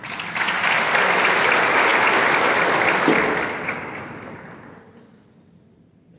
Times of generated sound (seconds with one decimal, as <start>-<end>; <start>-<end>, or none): none